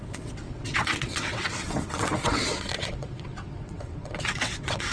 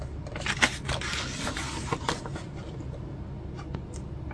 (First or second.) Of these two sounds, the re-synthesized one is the first